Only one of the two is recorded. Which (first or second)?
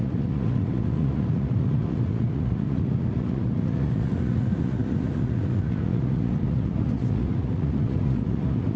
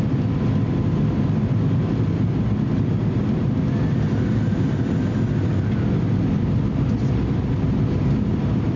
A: second